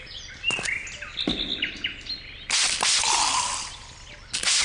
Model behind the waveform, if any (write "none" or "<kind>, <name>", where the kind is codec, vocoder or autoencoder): none